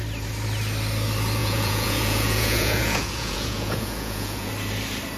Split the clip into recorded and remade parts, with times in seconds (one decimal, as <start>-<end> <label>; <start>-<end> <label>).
0.0-1.4 recorded; 1.4-4.5 remade; 4.5-5.2 recorded